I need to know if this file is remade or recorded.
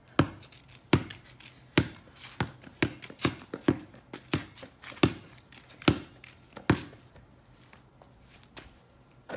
recorded